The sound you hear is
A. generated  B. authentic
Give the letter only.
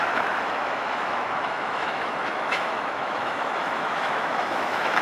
A